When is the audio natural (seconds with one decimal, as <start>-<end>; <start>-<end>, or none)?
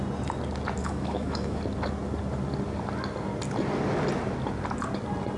0.0-0.8; 1.6-5.4